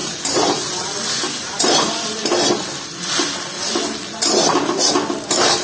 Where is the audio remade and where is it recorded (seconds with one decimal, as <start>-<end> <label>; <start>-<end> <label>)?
0.0-5.6 recorded

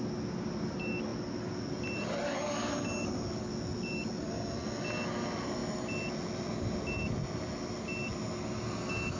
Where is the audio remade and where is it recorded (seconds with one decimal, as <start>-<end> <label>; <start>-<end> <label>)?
0.0-9.2 recorded

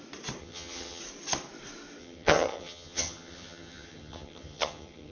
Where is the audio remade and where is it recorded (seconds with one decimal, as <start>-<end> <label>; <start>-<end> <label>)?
0.0-0.4 recorded; 0.4-1.0 remade; 1.0-2.0 recorded; 2.0-5.1 remade

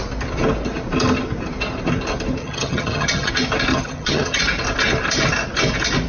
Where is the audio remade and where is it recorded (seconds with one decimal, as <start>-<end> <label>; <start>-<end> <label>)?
0.0-2.4 recorded; 2.4-3.3 remade; 3.3-3.7 recorded; 3.7-4.4 remade; 4.4-6.1 recorded

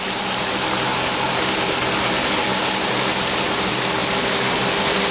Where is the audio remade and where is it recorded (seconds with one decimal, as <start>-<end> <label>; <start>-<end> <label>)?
0.0-5.1 recorded

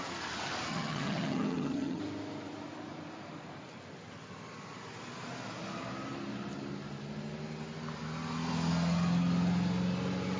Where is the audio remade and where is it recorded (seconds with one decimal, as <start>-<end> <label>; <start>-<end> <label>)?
0.0-0.7 recorded; 0.7-2.0 remade; 2.0-10.4 recorded